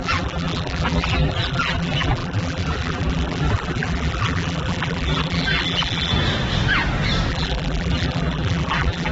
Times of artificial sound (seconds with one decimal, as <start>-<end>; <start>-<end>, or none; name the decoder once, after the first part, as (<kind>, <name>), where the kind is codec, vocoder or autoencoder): 0.0-6.1 (vocoder, BigVGAN v2); 7.3-9.1